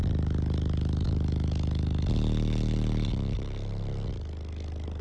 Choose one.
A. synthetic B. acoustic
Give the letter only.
B